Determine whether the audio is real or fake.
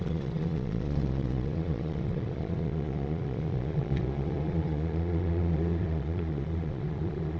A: fake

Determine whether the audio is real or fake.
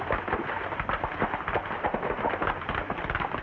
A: real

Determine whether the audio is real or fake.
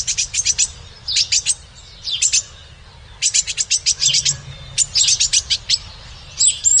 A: real